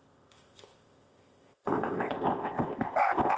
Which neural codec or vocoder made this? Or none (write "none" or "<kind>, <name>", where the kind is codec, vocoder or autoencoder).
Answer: codec, ZipCodec